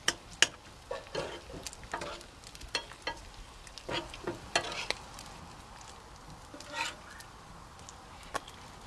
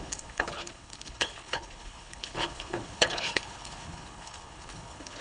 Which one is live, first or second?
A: first